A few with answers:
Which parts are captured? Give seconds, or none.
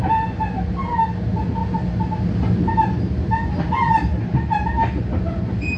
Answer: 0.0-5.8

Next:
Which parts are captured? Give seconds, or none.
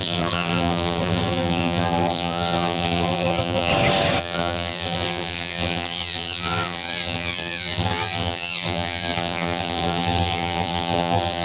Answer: 3.7-4.2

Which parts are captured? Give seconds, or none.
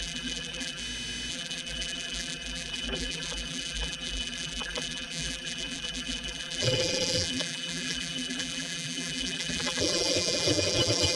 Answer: 0.8-1.3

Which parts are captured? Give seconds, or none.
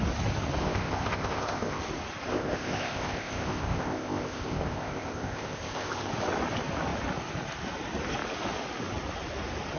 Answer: 0.0-0.6; 1.8-2.3; 6.1-9.8